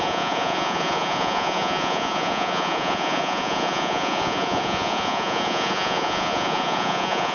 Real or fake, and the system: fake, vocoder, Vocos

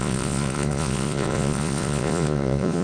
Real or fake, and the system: fake, vocoder, Vocos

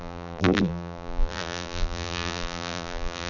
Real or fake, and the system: fake, vocoder, BigVGAN v2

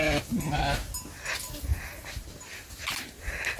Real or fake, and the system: real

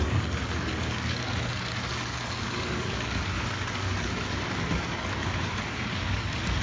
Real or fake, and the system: fake, codec, DAC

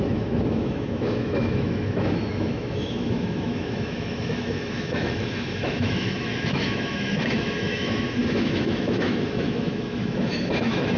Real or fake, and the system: fake, autoencoder, DAC-VAE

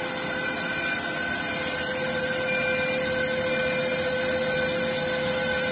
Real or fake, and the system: real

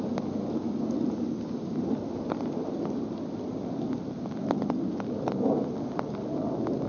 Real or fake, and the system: real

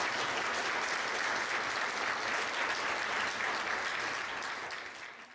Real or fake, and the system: real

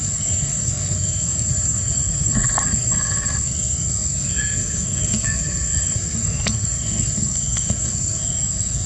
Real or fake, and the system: fake, codec, SNAC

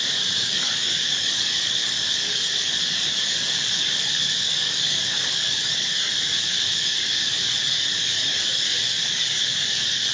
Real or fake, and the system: fake, codec, DAC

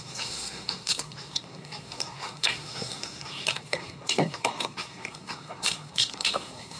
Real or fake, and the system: fake, codec, SNAC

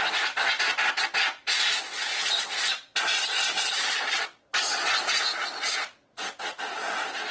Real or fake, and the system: real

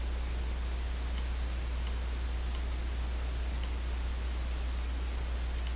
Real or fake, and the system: real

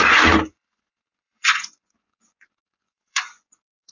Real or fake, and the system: fake, vocoder, Vocos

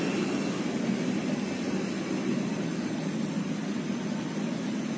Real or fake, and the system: real